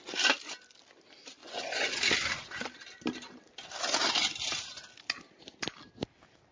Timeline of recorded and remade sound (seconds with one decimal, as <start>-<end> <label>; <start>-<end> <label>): 0.0-1.4 recorded; 1.4-2.0 remade; 2.0-6.5 recorded